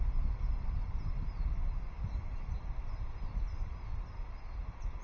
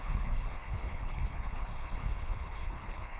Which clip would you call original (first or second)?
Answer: first